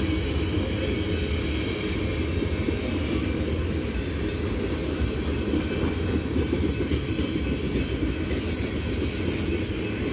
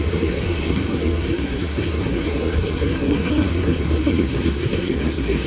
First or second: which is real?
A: first